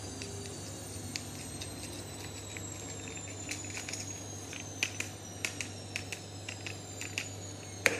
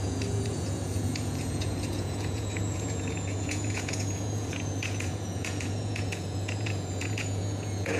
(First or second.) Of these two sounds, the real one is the first